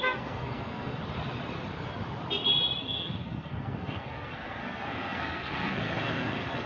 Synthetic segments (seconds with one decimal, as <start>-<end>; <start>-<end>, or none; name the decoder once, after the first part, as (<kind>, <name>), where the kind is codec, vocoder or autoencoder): 0.0-1.0 (codec, SNAC); 2.8-6.7